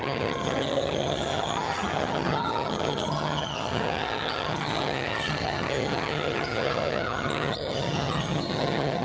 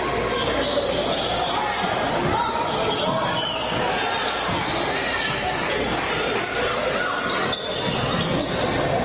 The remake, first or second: first